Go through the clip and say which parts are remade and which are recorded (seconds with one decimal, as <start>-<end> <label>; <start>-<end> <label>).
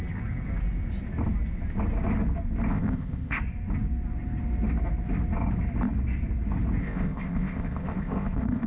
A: 0.0-2.7 recorded; 2.7-3.4 remade; 3.4-6.8 recorded; 6.8-8.7 remade